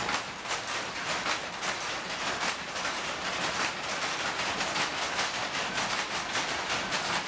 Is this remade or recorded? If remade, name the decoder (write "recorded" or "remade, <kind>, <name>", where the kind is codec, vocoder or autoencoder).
recorded